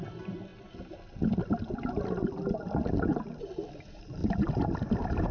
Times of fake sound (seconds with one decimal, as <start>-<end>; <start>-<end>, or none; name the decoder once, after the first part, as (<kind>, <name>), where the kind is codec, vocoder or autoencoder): 0.0-0.5 (vocoder, BigVGAN v2); 3.7-4.2; 4.7-5.3